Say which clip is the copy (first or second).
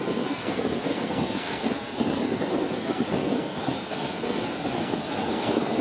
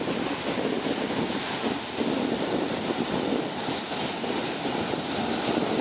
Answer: first